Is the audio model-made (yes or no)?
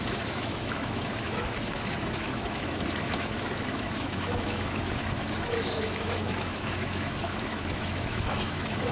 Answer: yes